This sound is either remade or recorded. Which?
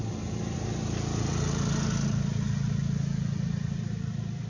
recorded